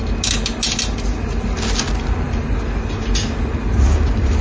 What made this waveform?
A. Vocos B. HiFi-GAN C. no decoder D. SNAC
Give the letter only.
C